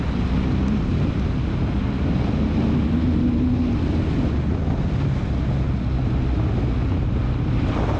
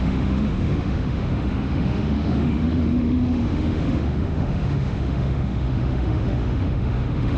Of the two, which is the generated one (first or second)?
second